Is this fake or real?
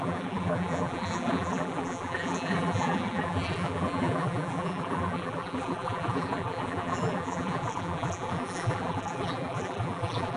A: fake